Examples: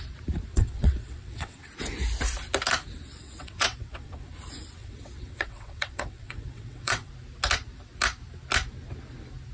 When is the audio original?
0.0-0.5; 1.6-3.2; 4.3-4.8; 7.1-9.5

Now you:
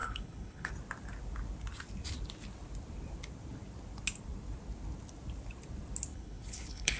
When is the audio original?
0.7-6.1

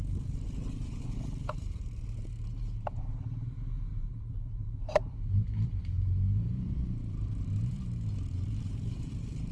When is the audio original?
none